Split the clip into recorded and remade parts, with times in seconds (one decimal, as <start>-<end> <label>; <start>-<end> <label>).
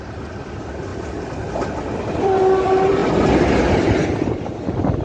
0.0-0.9 remade; 0.9-2.2 recorded; 2.2-3.0 remade; 3.0-5.0 recorded